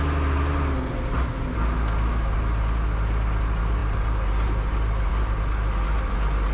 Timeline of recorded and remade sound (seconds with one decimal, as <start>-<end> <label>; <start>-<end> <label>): 0.0-6.5 recorded

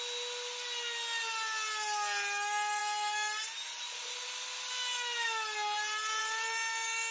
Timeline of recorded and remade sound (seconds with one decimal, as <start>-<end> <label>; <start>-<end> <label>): 0.0-7.1 recorded

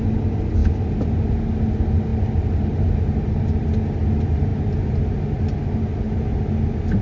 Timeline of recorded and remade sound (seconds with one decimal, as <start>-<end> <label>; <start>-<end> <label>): 0.0-7.0 recorded

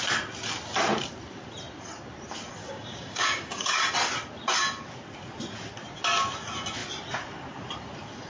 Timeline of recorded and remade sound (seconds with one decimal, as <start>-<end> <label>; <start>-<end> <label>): 0.0-2.6 recorded; 2.6-3.8 remade; 3.8-8.3 recorded

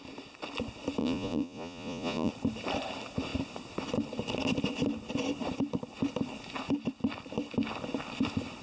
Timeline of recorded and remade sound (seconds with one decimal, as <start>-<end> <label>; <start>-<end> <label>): 0.0-1.0 recorded; 1.0-2.3 remade; 2.3-8.6 recorded

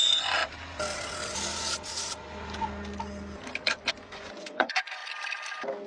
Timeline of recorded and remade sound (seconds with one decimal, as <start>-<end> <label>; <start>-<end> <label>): 0.0-0.4 remade; 0.4-3.9 recorded; 3.9-5.0 remade; 5.0-5.9 recorded